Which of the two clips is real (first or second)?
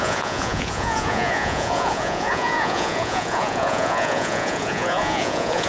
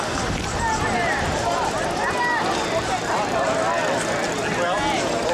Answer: second